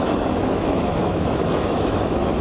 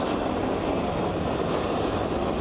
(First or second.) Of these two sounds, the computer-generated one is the first